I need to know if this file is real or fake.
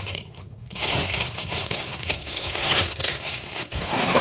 fake